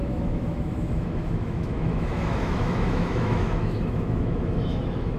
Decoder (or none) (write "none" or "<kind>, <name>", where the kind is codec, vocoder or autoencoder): autoencoder, DAC-VAE